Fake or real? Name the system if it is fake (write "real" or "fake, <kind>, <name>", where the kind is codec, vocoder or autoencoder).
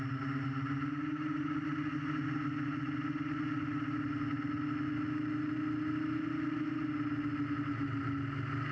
real